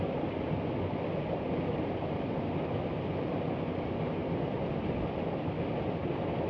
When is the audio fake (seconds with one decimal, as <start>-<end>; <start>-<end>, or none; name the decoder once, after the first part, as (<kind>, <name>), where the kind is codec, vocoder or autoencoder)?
none